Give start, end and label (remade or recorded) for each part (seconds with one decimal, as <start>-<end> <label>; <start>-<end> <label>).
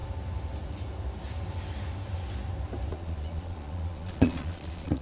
0.0-2.9 recorded; 2.9-5.0 remade